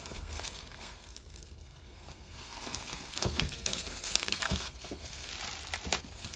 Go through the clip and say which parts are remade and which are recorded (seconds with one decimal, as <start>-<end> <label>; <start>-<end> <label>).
0.0-5.3 remade; 5.3-6.0 recorded; 6.0-6.4 remade

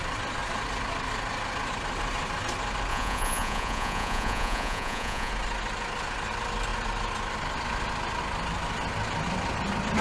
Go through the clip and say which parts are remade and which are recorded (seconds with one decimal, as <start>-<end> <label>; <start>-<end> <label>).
0.0-2.9 recorded; 2.9-5.3 remade; 5.3-10.0 recorded

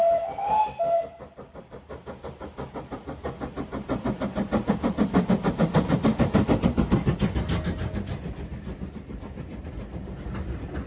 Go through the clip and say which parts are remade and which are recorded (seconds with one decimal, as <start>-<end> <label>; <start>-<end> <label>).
0.0-10.9 recorded